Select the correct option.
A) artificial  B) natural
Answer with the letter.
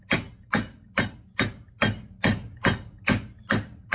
B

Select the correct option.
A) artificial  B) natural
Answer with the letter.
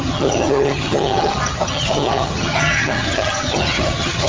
A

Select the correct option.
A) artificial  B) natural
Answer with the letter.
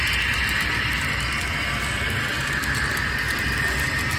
B